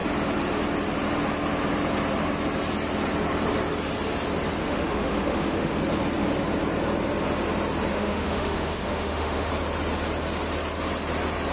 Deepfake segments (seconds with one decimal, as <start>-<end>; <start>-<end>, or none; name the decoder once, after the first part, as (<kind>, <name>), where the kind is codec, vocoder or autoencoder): 4.6-5.8 (autoencoder, DAC-VAE); 7.9-9.5